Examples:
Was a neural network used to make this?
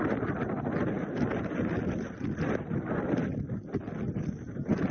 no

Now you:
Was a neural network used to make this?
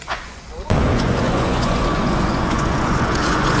yes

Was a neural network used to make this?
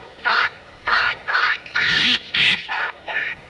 yes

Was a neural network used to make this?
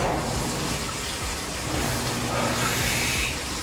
no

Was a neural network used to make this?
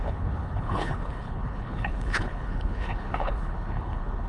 yes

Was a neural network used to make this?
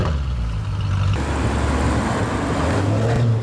no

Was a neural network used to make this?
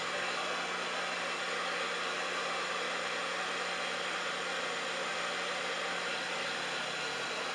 no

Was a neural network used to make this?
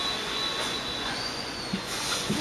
yes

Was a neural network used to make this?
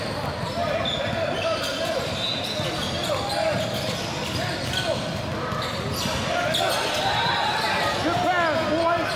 no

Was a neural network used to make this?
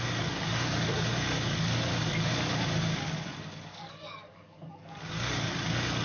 yes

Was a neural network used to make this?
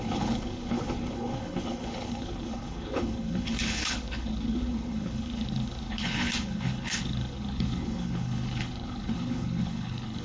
yes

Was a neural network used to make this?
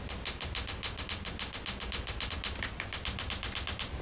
no